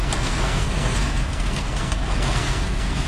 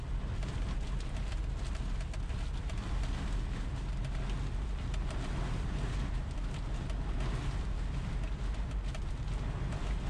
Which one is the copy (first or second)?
first